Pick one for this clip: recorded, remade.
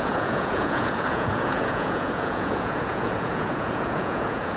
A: remade